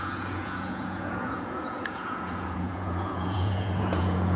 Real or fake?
fake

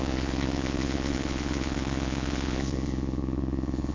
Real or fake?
fake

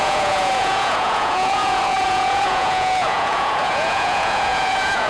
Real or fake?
fake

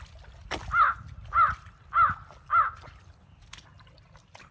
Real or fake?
real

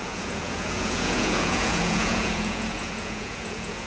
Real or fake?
fake